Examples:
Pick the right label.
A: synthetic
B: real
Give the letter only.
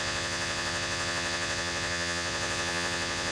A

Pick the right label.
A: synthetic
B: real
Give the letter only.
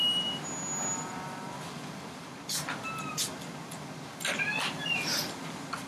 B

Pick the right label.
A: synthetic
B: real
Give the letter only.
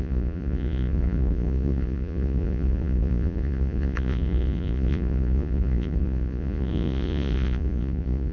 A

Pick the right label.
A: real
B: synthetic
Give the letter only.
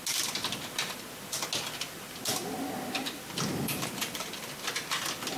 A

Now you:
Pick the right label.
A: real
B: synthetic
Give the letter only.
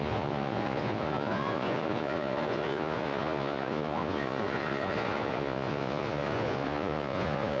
B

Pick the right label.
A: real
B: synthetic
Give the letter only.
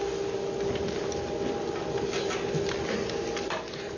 A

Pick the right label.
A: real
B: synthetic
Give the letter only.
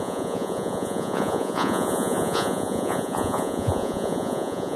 B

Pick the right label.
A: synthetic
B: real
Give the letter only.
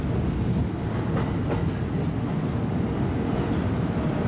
B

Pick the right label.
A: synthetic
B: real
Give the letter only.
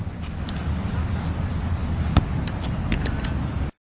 B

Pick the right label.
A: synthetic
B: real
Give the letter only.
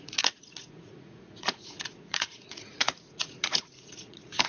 A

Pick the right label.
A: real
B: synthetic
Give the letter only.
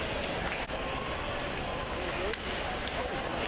A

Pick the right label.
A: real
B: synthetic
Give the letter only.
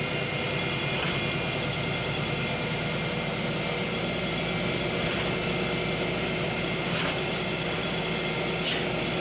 A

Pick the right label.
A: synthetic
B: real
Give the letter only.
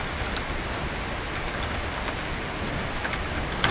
B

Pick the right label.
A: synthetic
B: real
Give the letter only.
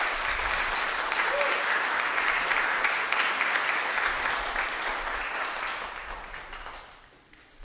B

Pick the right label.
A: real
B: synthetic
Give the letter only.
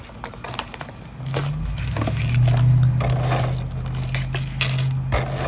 A